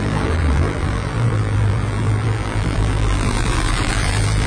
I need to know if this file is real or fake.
fake